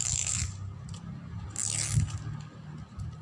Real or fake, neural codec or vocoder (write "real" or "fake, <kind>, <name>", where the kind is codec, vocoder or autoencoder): real